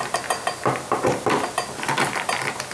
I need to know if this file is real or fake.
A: real